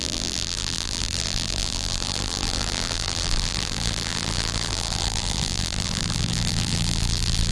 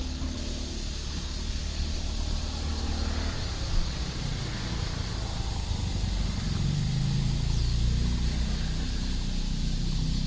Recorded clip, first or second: second